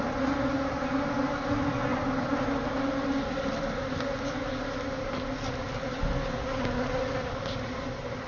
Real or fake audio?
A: real